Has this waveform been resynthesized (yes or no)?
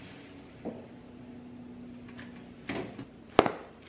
no